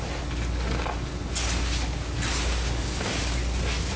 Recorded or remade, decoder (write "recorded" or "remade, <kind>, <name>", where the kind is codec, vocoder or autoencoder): recorded